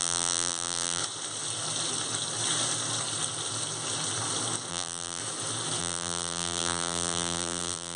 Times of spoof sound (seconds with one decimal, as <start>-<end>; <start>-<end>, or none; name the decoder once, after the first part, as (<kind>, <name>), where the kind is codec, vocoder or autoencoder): 0.0-1.0 (vocoder, BigVGAN v2); 4.7-5.2; 5.8-8.0